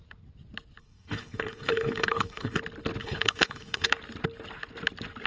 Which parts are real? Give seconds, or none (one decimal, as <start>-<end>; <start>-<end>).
0.0-0.8; 2.6-3.0; 3.9-5.3